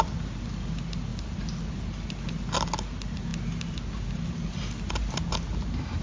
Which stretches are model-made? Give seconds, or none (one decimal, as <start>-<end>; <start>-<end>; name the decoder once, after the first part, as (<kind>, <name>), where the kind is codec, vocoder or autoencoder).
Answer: none